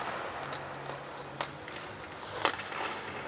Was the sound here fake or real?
real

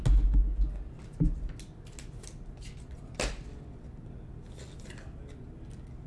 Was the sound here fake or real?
real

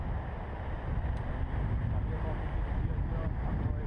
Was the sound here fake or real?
real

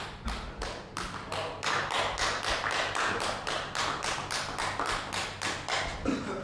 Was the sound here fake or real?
real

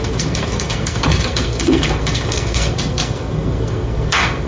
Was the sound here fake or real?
fake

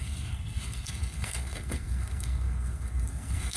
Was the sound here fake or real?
fake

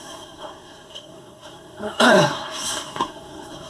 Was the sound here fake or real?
fake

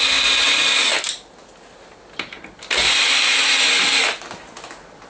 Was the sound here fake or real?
real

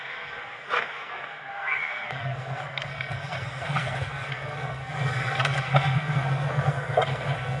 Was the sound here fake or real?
fake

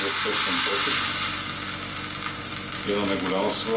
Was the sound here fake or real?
real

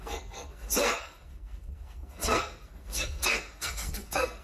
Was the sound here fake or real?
fake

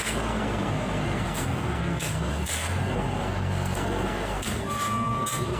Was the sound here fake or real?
fake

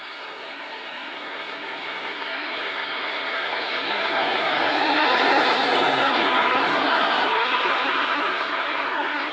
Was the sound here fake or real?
fake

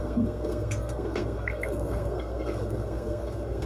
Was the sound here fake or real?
fake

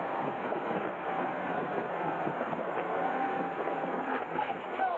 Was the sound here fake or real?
fake